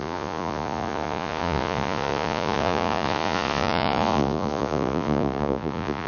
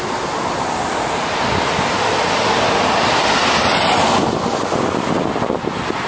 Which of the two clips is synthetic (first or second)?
first